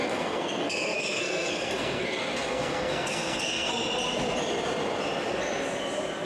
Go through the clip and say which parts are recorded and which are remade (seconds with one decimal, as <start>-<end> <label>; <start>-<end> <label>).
0.0-3.7 remade; 3.7-6.2 recorded